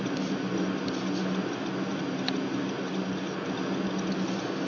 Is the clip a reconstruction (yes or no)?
no